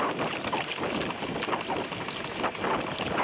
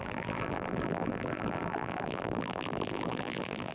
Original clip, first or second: first